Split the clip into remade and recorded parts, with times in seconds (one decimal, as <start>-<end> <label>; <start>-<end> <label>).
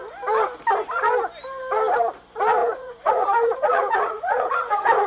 0.0-2.6 recorded; 2.6-5.1 remade